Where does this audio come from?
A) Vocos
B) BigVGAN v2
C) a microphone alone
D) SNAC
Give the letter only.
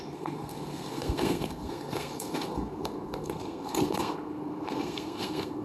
D